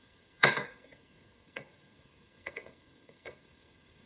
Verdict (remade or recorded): remade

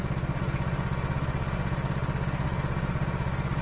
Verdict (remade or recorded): recorded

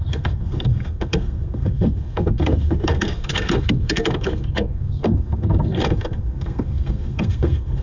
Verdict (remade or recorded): remade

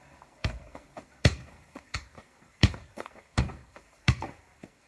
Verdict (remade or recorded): remade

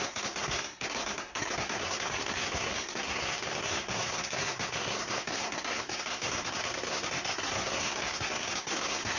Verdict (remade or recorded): remade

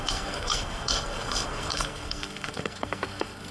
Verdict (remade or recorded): remade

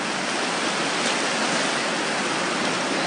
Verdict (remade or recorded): recorded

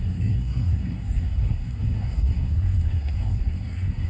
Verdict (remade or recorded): remade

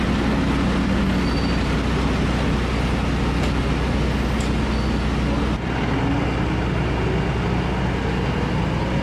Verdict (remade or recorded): recorded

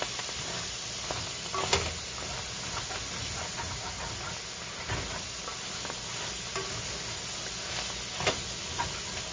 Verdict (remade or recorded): recorded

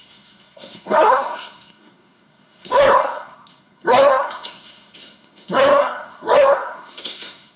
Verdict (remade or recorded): remade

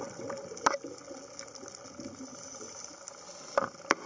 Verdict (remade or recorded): recorded